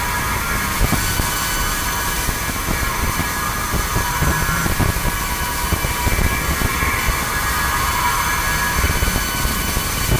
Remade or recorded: recorded